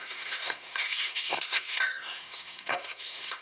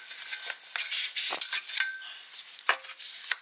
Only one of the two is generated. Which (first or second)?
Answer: first